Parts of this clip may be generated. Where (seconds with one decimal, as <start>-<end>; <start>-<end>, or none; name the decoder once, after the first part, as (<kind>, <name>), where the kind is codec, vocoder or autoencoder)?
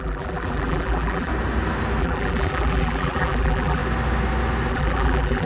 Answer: 0.0-1.3 (vocoder, BigVGAN v2); 2.0-3.8; 4.7-5.5